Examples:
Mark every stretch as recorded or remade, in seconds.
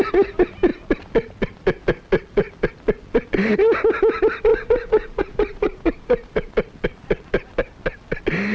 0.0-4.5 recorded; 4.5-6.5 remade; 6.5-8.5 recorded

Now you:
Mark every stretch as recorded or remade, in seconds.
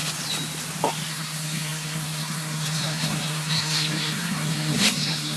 0.0-1.1 recorded; 1.1-5.4 remade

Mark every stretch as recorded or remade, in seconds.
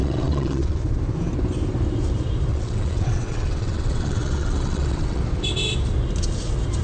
0.0-0.8 remade; 0.8-2.5 recorded; 2.5-5.2 remade; 5.2-6.8 recorded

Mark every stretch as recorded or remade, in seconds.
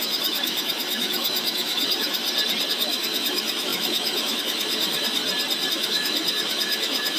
0.0-2.2 remade; 2.2-2.7 recorded; 2.7-5.2 remade; 5.2-5.7 recorded; 5.7-7.2 remade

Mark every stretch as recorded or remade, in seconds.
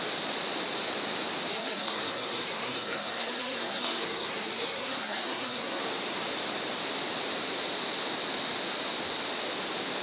0.0-1.5 recorded; 1.5-5.8 remade; 5.8-10.0 recorded